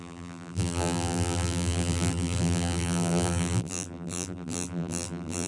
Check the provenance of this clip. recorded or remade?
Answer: remade